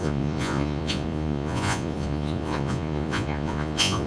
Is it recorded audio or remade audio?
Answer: remade